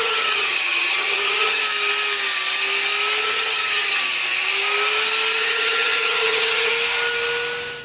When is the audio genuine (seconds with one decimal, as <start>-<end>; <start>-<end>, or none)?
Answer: 1.6-3.2; 4.0-5.4; 6.7-7.8